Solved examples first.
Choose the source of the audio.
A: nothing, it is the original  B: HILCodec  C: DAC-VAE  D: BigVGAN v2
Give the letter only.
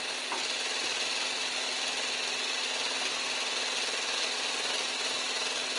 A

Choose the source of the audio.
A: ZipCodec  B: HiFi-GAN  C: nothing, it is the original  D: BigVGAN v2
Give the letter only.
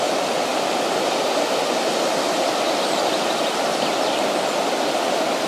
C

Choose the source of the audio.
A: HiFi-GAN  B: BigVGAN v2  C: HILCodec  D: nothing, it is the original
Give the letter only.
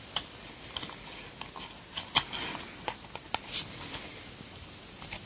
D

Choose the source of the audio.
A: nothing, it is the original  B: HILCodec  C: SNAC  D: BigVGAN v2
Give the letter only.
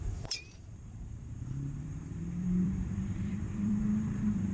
D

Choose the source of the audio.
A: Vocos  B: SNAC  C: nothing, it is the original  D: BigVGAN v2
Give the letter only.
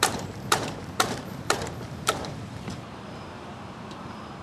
D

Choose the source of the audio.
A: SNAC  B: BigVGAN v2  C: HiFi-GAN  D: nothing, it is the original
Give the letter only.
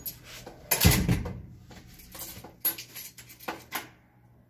D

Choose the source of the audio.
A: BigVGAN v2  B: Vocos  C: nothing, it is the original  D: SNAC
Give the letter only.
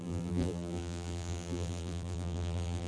A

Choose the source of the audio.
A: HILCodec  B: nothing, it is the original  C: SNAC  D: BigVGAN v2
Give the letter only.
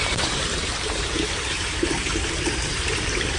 D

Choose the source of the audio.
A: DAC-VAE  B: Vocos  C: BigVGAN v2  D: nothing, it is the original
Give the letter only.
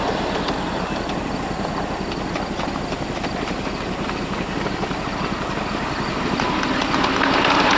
D